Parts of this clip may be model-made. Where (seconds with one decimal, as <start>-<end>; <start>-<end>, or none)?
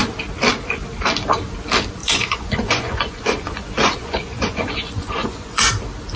2.0-5.7